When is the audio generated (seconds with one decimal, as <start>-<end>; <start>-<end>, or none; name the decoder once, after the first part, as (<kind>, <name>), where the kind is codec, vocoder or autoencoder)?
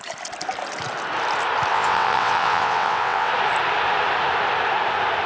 1.7-3.3 (vocoder, WaveNeXt)